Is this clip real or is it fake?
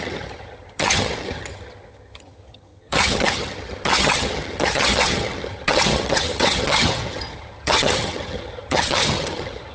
fake